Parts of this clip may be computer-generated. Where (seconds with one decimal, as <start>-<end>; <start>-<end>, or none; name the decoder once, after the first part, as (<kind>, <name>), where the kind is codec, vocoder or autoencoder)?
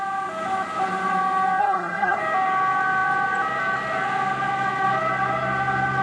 1.6-2.2 (codec, SNAC)